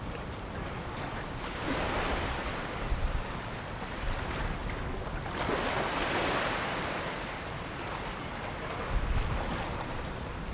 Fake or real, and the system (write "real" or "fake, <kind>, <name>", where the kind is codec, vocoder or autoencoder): real